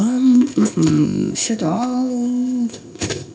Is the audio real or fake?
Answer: fake